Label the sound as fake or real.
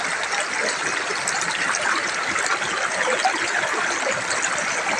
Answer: real